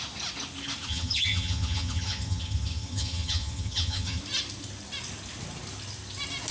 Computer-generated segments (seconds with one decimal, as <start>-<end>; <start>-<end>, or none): 0.9-4.2